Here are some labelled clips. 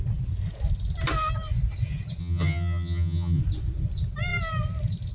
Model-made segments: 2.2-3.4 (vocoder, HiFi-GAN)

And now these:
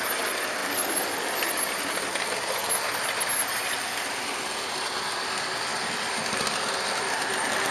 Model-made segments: 0.0-2.6 (vocoder, BigVGAN v2); 3.5-5.7; 7.3-7.7

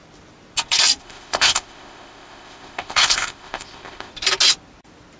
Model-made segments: 1.0-4.1 (codec, ZipCodec)

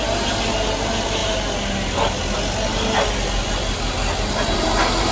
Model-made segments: none

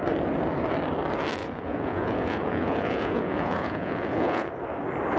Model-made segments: 1.4-4.5 (vocoder, Vocos)

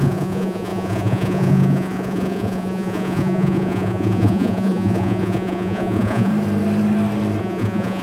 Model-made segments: 0.0-6.3 (vocoder, Vocos); 7.4-8.0

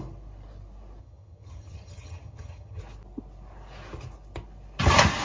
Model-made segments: 1.0-2.8 (vocoder, HiFi-GAN)

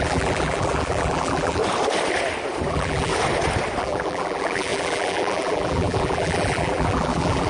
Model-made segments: 0.0-1.6 (vocoder, BigVGAN v2); 2.7-3.1; 3.8-7.5